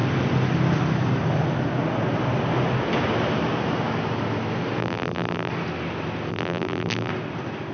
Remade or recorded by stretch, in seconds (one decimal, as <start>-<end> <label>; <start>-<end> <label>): 0.0-4.8 recorded; 4.8-5.5 remade; 5.5-6.3 recorded; 6.3-7.1 remade; 7.1-7.7 recorded

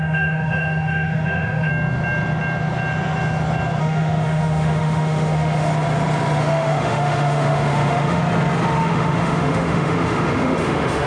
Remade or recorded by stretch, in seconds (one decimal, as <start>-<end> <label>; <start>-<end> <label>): 0.0-1.7 remade; 1.7-3.8 recorded; 3.8-5.7 remade; 5.7-6.4 recorded; 6.4-8.2 remade; 8.2-8.8 recorded; 8.8-11.1 remade